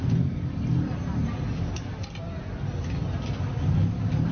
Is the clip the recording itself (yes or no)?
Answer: yes